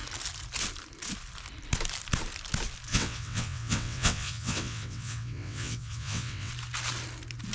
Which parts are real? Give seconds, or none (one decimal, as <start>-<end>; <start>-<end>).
0.0-2.9; 6.5-7.5